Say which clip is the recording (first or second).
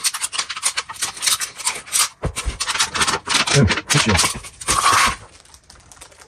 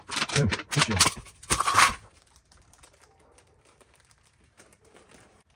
first